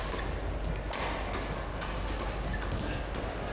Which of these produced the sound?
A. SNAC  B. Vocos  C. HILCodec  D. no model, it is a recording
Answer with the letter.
D